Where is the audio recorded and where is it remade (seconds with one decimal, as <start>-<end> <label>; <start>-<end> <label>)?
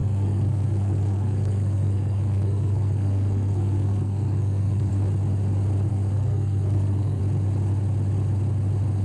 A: 0.0-4.9 remade; 4.9-5.9 recorded; 5.9-7.2 remade; 7.2-9.0 recorded